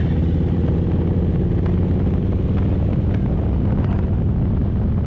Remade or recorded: recorded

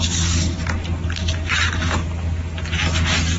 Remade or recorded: recorded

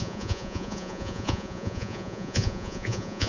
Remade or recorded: remade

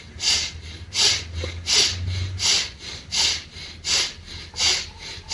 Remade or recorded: recorded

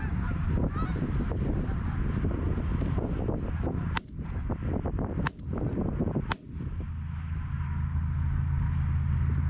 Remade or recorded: recorded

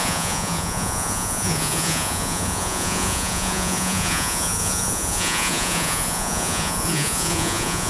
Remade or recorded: remade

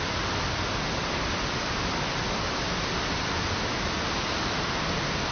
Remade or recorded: recorded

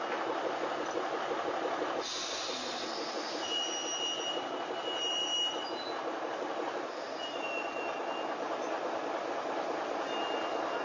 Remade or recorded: recorded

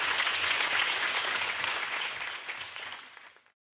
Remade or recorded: remade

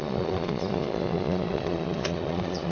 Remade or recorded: remade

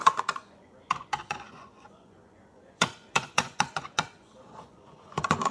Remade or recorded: remade